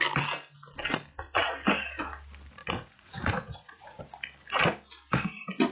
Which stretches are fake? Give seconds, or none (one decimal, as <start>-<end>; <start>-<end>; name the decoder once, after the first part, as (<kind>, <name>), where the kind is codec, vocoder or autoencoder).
2.6-4.0 (vocoder, Vocos)